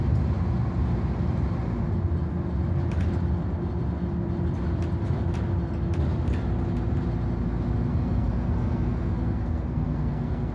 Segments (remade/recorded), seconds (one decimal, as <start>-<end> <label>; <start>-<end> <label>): 0.0-7.9 recorded; 7.9-10.5 remade